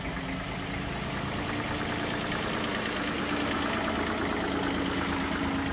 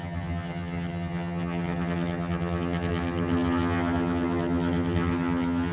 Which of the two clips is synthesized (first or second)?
second